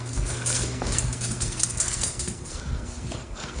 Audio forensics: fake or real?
fake